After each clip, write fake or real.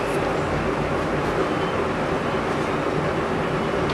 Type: real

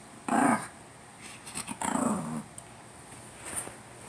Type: real